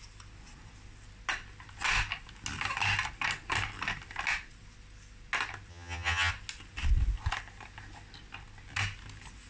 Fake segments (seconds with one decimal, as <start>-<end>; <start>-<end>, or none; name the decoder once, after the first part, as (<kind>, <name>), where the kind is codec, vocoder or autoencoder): 5.7-6.3 (vocoder, HiFi-GAN)